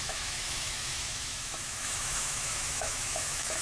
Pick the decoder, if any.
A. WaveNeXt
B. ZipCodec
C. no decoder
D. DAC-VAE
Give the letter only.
D